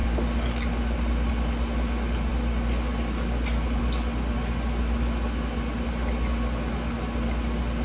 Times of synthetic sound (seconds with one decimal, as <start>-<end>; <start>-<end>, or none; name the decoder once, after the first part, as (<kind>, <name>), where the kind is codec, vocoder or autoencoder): none